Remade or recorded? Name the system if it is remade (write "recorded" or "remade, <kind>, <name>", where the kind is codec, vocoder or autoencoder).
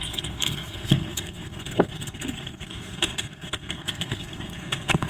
remade, codec, SNAC